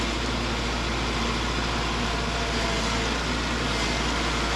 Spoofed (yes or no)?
no